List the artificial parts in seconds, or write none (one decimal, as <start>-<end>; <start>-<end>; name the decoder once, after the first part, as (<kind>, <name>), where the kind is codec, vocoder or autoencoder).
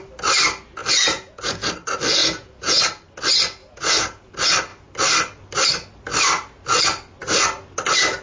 0.8-1.7 (vocoder, Vocos); 2.2-2.8; 3.6-4.3